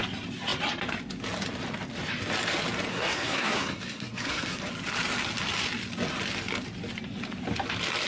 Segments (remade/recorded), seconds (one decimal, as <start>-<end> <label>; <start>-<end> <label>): 0.0-2.9 recorded; 2.9-4.6 remade; 4.6-8.1 recorded